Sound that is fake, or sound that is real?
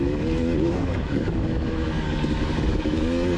fake